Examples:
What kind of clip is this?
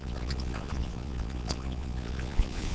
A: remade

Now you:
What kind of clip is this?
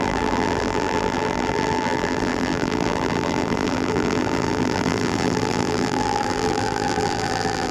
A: remade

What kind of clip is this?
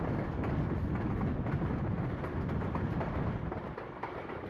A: recorded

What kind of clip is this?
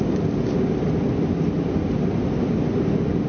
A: recorded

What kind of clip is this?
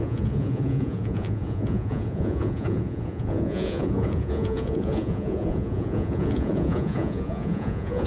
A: remade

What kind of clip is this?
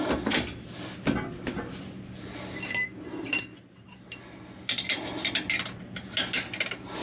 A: recorded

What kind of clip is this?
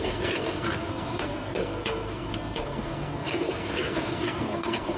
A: remade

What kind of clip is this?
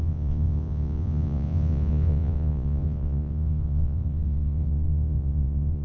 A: remade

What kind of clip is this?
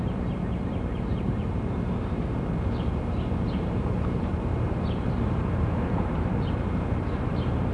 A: remade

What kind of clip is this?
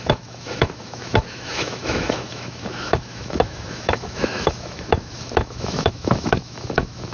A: remade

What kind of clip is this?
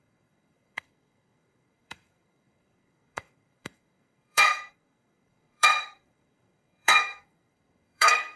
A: remade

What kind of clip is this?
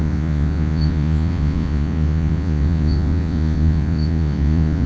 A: remade